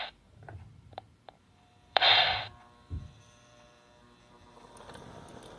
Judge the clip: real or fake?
fake